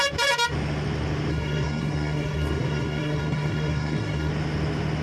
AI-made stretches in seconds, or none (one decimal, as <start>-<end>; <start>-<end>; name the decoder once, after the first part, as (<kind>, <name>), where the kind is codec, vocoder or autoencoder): 1.3-4.3 (codec, SNAC)

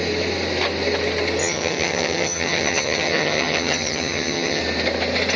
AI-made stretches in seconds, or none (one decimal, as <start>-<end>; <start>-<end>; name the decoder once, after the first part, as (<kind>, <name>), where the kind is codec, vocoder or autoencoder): 1.4-4.6 (vocoder, HiFi-GAN)

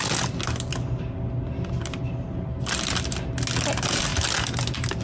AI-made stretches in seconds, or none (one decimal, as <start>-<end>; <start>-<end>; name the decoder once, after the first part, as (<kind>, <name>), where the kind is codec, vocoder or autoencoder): none

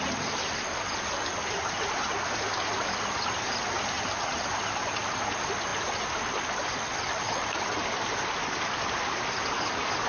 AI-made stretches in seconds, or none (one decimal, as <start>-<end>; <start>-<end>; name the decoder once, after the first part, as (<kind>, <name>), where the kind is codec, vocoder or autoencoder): none

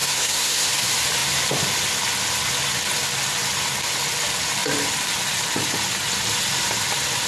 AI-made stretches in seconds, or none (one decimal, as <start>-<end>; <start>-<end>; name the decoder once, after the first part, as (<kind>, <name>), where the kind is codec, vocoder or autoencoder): 0.0-0.7 (codec, SNAC)